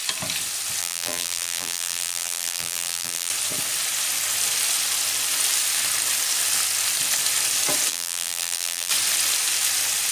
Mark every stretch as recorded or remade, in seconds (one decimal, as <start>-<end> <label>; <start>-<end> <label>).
0.0-0.8 recorded; 0.8-3.3 remade; 3.3-7.9 recorded; 7.9-8.9 remade; 8.9-10.1 recorded